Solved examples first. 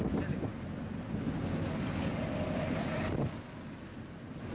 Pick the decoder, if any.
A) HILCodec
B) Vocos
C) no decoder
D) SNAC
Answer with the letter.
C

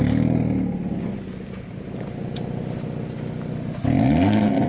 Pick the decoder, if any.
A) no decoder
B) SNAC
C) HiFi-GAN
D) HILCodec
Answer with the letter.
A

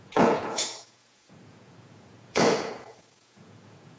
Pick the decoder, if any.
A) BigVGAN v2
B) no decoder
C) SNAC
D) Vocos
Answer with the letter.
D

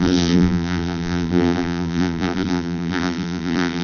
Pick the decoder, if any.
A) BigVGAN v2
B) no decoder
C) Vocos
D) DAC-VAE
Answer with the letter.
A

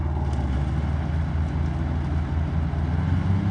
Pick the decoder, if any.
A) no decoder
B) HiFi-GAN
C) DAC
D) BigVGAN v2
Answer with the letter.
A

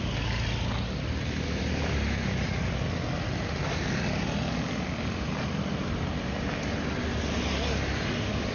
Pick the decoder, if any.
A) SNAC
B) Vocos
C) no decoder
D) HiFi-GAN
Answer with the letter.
C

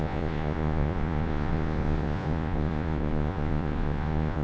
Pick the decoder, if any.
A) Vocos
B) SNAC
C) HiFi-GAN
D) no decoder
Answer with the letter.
A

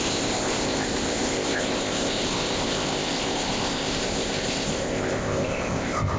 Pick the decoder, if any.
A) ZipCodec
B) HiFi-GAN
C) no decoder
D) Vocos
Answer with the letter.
A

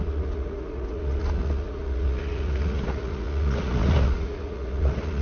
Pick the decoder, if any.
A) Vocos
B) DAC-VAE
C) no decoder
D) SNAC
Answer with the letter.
A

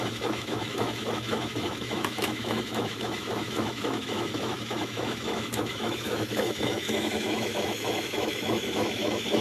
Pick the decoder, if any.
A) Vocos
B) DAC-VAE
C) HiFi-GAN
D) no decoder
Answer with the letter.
B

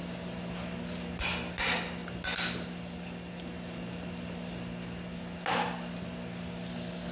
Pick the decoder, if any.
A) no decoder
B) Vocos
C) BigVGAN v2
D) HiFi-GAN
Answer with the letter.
A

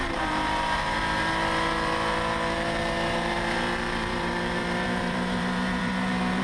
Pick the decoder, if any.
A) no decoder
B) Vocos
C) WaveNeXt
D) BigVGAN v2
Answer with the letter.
D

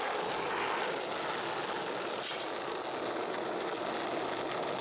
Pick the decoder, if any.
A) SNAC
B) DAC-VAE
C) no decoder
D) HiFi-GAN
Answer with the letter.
C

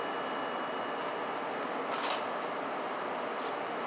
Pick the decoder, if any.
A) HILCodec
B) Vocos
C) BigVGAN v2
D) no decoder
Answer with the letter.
D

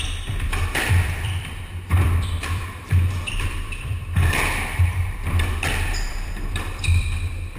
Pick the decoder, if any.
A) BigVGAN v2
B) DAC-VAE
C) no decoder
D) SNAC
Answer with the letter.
A